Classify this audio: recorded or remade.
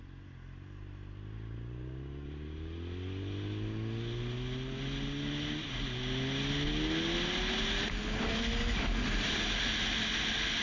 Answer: recorded